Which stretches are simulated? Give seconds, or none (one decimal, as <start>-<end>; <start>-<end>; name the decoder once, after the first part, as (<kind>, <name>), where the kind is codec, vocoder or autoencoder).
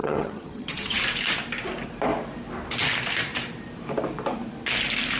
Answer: 0.0-1.0 (vocoder, HiFi-GAN)